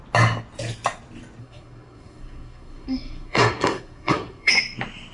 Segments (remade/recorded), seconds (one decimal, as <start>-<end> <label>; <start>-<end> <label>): 0.0-1.4 recorded; 1.4-4.5 remade; 4.5-5.1 recorded